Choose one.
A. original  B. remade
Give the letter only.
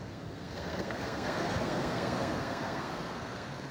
B